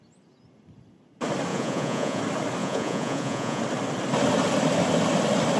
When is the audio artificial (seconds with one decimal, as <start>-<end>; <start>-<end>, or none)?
1.5-2.2; 2.6-3.6